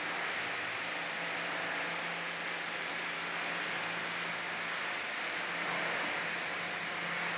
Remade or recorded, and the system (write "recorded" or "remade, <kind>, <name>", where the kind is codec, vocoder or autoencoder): recorded